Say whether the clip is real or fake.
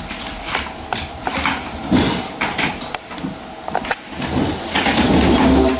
real